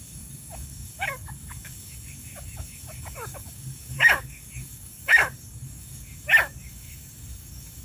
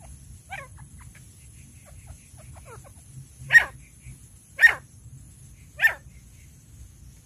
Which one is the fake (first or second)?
first